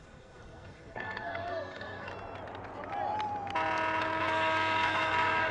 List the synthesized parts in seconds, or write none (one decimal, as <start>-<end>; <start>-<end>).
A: 0.0-2.1; 4.0-5.5